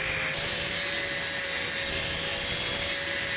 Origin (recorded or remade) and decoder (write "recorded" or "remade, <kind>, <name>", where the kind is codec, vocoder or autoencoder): recorded